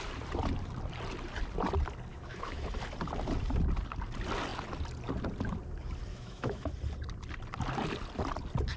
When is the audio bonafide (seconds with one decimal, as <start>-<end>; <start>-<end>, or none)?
0.0-2.1; 2.7-6.1; 6.7-8.8